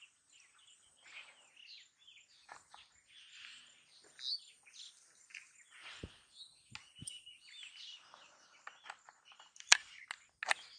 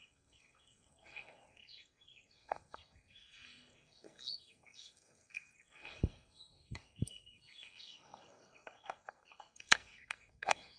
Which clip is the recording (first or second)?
first